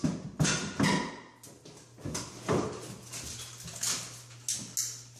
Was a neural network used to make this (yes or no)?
no